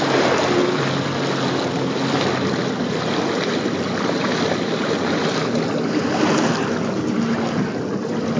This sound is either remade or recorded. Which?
recorded